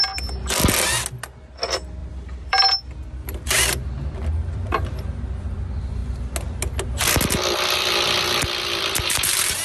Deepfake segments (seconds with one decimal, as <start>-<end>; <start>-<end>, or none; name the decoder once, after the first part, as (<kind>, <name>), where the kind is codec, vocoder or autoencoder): 2.0-5.6 (vocoder, BigVGAN v2)